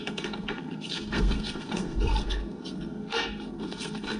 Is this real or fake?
fake